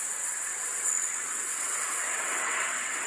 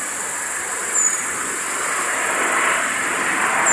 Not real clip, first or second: first